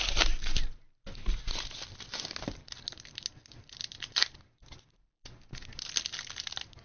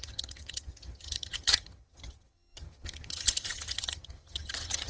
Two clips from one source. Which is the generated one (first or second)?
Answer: second